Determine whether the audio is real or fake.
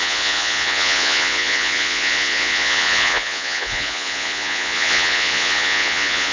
fake